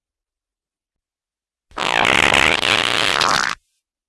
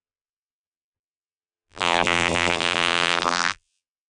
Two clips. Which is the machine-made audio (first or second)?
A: second